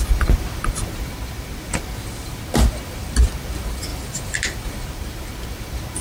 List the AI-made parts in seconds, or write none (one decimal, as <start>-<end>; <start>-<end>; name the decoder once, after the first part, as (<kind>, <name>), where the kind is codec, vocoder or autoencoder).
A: none